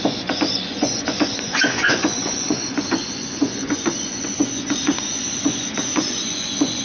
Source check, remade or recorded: remade